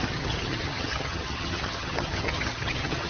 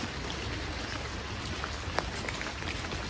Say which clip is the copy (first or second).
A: first